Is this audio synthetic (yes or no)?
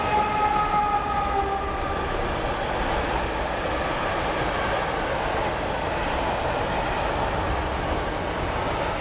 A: no